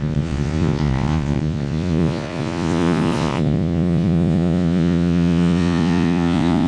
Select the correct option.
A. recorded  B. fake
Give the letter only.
B